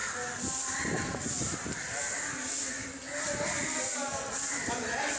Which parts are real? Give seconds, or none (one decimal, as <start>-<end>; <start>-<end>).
0.0-5.2

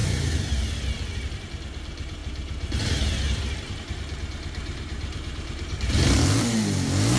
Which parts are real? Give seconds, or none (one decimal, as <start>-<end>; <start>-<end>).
0.8-2.2; 5.9-7.2

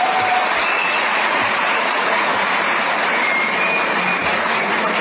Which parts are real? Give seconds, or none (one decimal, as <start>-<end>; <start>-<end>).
0.0-0.8; 2.3-4.2